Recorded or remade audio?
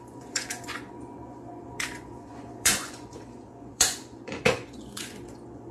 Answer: remade